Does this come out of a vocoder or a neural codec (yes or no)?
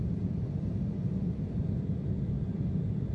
no